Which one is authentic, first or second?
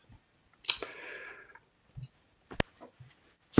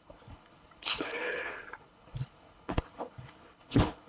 first